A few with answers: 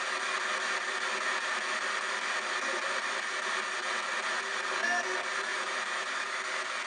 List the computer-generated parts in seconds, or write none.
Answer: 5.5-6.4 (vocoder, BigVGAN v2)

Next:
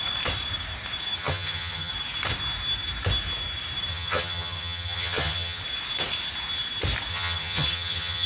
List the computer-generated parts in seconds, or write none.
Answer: 1.2-1.9 (vocoder, HiFi-GAN); 3.9-5.6; 7.1-8.3

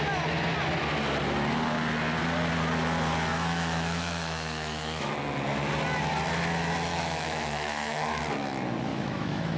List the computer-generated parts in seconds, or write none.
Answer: 3.3-5.1 (autoencoder, DAC-VAE); 6.9-8.2; 8.9-9.6